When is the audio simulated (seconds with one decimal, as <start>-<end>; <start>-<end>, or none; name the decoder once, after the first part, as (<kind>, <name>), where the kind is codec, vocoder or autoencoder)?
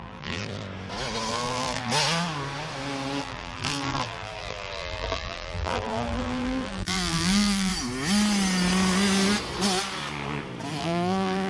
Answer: 0.0-0.4 (vocoder, BigVGAN v2); 1.3-1.9; 3.2-7.7; 10.8-11.5